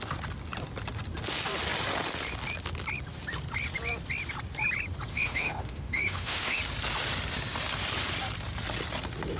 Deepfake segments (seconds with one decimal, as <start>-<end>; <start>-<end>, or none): 5.1-6.6